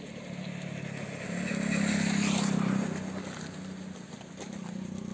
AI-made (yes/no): no